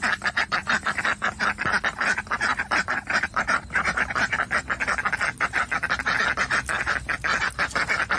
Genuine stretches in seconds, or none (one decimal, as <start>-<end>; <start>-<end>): 0.0-2.5; 4.6-5.6; 6.2-8.2